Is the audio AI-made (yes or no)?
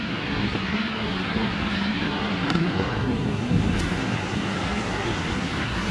yes